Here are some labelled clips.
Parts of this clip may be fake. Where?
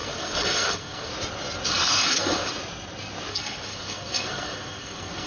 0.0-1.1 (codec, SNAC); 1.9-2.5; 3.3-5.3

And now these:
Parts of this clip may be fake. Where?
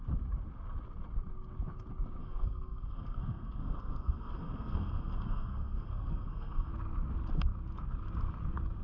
2.2-6.7 (codec, SNAC)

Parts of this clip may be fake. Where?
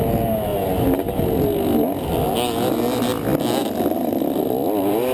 none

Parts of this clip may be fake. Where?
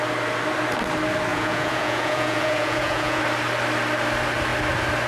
1.3-3.2 (vocoder, Vocos)